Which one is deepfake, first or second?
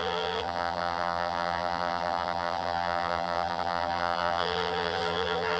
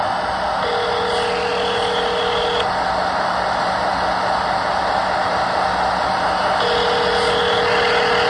first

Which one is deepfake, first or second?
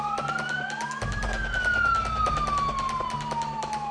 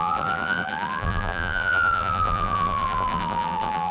second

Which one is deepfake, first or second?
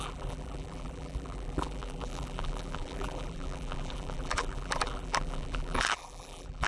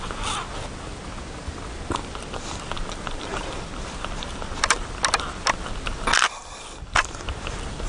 first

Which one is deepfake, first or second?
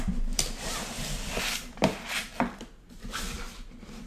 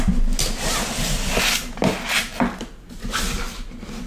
first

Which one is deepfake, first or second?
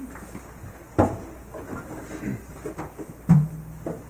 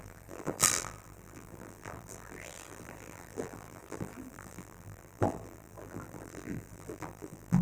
second